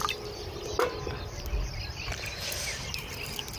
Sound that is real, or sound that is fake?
real